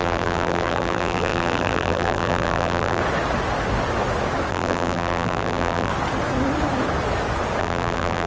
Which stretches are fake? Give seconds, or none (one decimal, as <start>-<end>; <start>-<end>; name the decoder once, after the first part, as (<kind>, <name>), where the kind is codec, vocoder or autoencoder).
0.0-3.0 (vocoder, BigVGAN v2); 4.5-5.9; 7.6-8.3